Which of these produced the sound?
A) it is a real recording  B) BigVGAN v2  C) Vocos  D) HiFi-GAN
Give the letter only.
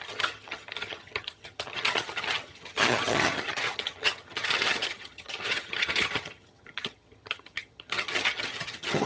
D